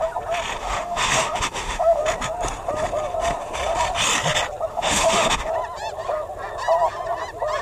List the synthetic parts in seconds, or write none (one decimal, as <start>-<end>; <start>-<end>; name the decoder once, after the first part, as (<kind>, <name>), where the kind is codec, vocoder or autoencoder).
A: 0.6-2.0 (autoencoder, DAC-VAE); 4.7-5.5